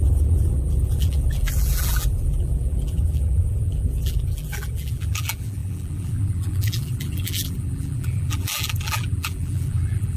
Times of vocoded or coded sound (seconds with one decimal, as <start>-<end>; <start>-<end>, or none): 0.0-10.2